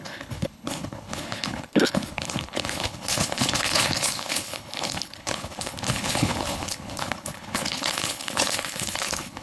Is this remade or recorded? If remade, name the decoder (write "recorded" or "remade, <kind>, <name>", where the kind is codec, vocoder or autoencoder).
remade, codec, HILCodec